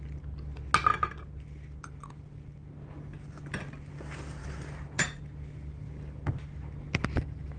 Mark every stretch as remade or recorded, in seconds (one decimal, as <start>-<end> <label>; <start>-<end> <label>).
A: 0.0-4.4 recorded; 4.4-5.2 remade; 5.2-7.6 recorded